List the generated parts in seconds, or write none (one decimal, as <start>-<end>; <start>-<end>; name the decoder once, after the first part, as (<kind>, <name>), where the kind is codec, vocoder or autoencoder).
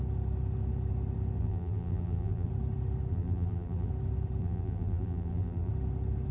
1.4-2.5 (vocoder, BigVGAN v2); 3.1-3.9; 4.4-5.7